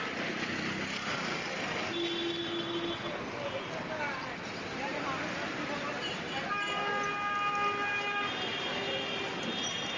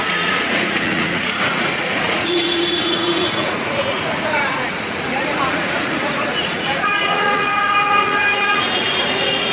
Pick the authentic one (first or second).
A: first